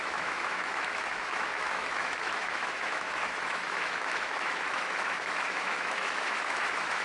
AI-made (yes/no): yes